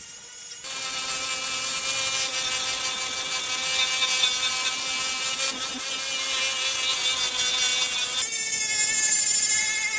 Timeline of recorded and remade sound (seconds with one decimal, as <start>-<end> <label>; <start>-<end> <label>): 0.0-10.0 recorded